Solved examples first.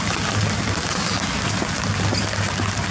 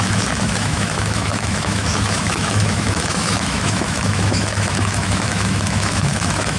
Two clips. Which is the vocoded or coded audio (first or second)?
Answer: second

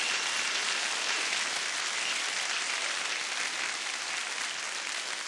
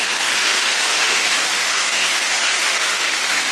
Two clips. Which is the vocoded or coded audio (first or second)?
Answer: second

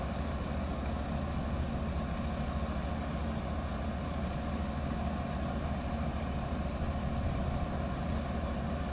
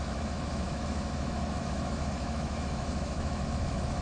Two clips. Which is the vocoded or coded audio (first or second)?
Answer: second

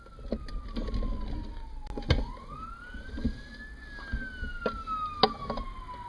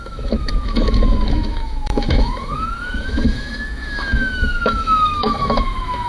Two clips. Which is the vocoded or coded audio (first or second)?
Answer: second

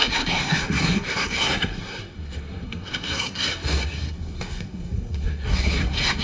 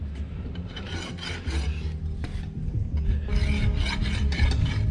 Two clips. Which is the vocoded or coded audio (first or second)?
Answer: first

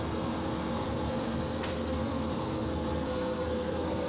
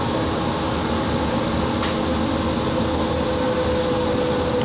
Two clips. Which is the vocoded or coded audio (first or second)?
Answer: first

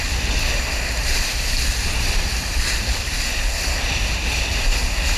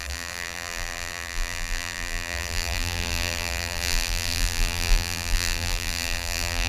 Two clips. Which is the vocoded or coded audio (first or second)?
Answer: second